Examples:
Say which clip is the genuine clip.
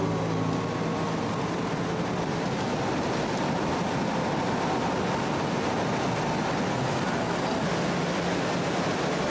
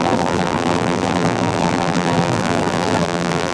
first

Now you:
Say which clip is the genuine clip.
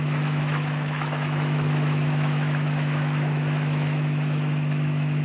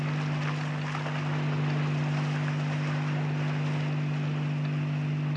second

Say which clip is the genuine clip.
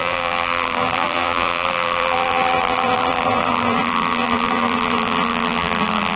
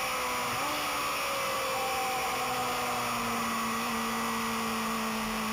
second